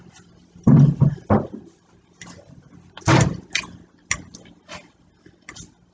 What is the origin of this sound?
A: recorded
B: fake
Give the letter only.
A